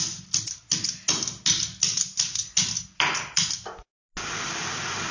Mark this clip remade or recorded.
recorded